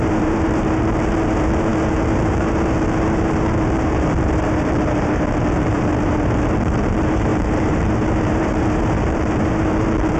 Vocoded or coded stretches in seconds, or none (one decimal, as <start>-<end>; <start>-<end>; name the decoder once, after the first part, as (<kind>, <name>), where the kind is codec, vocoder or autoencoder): 0.0-10.2 (vocoder, BigVGAN v2)